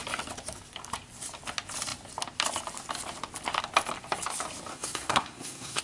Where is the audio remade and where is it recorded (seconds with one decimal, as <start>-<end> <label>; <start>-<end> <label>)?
0.0-4.7 recorded; 4.7-5.8 remade